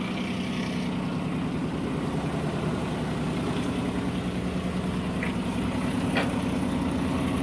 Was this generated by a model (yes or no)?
no